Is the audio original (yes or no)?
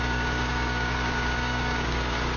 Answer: no